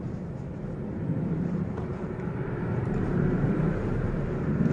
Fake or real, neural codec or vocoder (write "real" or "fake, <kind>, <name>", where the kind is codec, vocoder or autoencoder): fake, vocoder, BigVGAN v2